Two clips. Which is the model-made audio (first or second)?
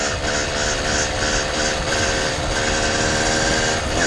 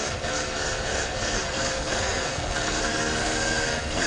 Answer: second